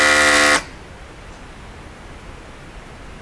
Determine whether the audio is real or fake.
real